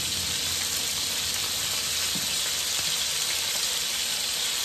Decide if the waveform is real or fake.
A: real